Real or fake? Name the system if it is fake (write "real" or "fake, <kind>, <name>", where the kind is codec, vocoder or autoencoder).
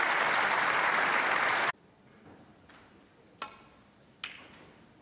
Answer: real